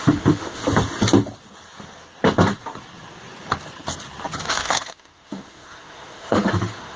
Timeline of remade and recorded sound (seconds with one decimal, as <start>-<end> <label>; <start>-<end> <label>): 0.0-0.6 remade; 0.6-4.4 recorded; 4.4-7.0 remade